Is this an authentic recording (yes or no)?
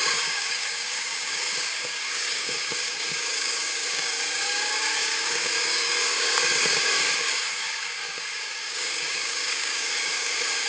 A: no